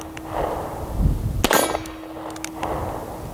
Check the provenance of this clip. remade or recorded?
recorded